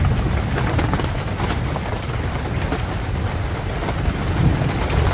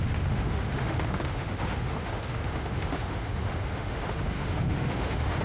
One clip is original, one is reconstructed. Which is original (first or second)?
first